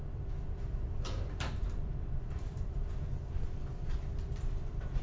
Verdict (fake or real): fake